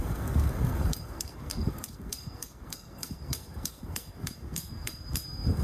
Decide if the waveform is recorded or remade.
remade